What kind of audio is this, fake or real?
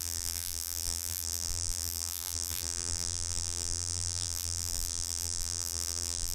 fake